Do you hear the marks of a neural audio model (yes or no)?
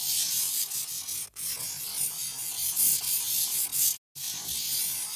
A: no